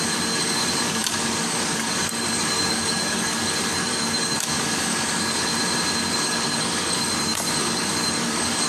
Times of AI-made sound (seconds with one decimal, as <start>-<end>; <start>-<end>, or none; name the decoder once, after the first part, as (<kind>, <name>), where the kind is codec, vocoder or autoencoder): 0.0-5.5 (codec, DAC); 6.1-8.7